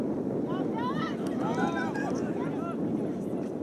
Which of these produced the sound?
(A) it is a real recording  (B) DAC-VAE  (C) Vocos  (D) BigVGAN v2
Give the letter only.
A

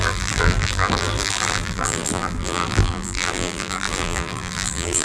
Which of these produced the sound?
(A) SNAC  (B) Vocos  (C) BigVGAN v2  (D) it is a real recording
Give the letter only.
C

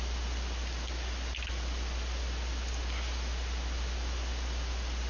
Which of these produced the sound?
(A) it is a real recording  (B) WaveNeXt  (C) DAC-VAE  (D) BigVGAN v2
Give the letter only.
A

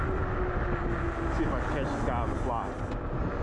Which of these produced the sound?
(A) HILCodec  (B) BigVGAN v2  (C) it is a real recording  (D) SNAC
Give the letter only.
C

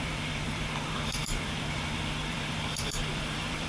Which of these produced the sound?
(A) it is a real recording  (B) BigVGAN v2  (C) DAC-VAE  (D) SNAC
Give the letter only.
B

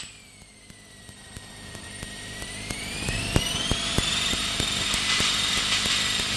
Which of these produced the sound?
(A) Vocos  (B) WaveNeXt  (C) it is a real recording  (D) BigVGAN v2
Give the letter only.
D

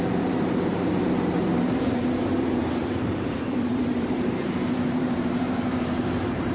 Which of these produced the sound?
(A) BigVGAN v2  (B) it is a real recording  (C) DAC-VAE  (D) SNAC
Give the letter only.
A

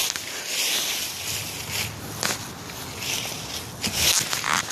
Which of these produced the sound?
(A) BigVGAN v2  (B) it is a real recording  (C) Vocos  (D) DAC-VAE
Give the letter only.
B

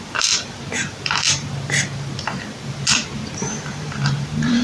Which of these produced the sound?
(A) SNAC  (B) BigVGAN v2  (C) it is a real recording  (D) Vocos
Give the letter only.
B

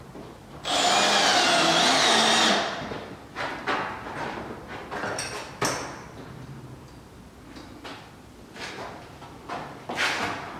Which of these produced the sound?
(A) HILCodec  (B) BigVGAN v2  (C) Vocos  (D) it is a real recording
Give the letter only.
D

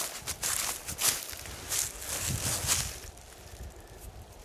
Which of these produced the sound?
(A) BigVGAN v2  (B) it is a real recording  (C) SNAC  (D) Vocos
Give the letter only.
B